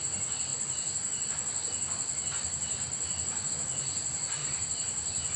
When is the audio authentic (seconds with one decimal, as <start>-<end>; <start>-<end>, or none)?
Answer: 0.0-4.4